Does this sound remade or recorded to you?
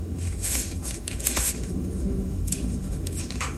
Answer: remade